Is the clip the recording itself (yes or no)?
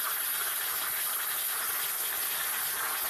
yes